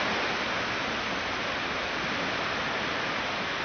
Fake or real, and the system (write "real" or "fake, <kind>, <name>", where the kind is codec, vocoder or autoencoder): real